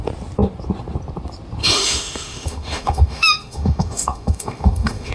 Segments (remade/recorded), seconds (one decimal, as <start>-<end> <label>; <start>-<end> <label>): 0.0-1.6 recorded; 1.6-5.1 remade